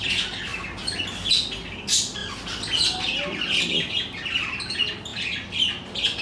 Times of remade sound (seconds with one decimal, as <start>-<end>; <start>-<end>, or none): none